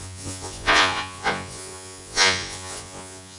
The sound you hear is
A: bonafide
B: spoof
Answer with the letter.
B